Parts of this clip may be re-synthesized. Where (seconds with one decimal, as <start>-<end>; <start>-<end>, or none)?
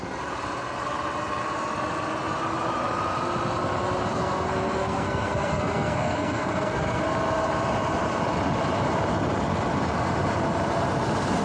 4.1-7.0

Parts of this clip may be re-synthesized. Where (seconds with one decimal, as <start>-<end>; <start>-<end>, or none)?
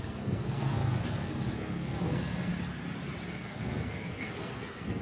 0.0-2.5; 3.3-5.0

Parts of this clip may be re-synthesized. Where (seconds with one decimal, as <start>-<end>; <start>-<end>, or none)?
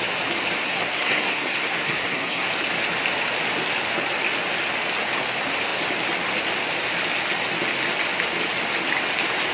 0.6-2.5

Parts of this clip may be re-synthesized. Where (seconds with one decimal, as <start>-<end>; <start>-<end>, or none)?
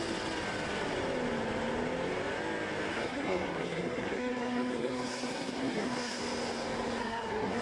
2.9-6.2; 7.0-7.6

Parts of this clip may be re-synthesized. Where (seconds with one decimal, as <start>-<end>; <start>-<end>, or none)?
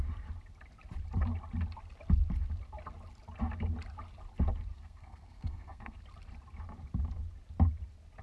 4.7-6.0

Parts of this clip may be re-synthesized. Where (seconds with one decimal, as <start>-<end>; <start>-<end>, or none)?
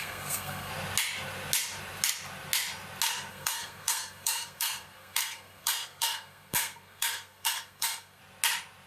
0.0-0.7; 3.3-8.2